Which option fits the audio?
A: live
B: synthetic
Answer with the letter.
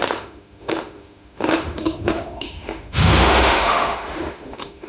B